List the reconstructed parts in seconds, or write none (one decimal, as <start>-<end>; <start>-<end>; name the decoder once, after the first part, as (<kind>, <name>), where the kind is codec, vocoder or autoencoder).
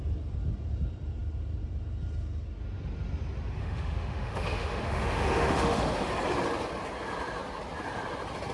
3.6-6.1 (autoencoder, DAC-VAE)